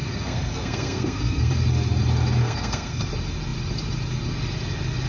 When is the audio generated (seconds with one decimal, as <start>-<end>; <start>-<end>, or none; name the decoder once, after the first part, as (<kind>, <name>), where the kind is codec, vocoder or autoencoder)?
0.0-1.5 (codec, SNAC); 2.4-3.1